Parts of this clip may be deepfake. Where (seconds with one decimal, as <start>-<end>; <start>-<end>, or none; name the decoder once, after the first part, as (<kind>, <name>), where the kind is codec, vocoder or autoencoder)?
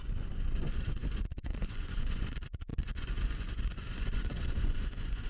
0.0-5.3 (vocoder, Vocos)